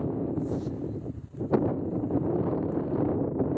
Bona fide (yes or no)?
no